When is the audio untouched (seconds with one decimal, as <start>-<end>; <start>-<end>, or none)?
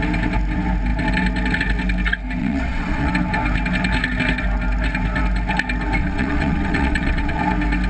0.0-2.4; 3.1-6.0; 7.4-7.9